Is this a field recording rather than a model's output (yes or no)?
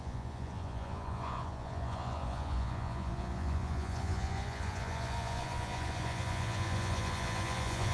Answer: no